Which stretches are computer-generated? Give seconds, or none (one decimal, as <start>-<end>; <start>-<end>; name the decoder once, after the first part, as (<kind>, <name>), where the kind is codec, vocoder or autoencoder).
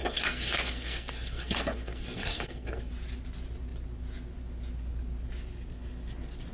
0.0-2.9 (codec, SNAC)